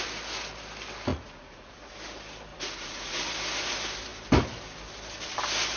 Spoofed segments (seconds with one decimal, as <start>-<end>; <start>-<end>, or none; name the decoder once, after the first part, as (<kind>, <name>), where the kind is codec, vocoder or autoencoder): 1.1-1.9 (vocoder, Vocos); 2.5-3.3